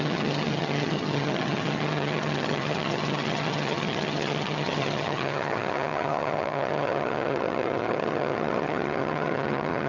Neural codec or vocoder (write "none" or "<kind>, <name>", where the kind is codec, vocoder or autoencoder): vocoder, HiFi-GAN